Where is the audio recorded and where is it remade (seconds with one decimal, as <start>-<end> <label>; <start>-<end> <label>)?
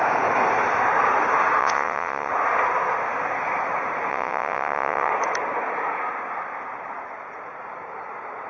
0.0-1.6 recorded; 1.6-2.3 remade; 2.3-4.1 recorded; 4.1-5.1 remade; 5.1-8.5 recorded